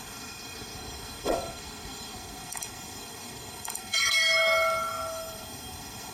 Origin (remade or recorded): remade